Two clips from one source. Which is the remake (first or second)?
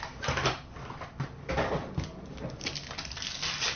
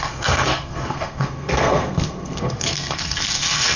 second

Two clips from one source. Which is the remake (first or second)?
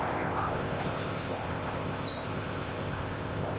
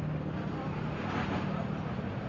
first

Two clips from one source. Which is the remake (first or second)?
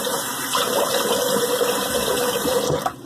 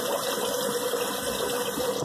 first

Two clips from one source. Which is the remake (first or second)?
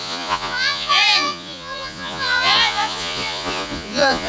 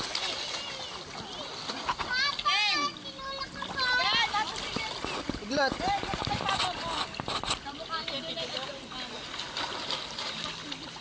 first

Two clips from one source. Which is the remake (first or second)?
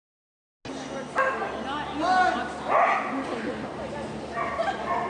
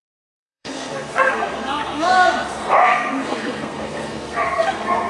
second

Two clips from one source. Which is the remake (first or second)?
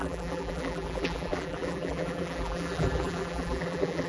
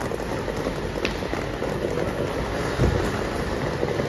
first